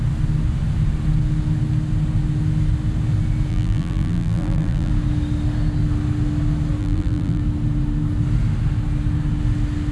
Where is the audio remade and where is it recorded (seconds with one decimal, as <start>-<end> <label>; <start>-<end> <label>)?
0.0-3.5 recorded; 3.5-4.9 remade; 4.9-6.8 recorded; 6.8-7.4 remade; 7.4-9.9 recorded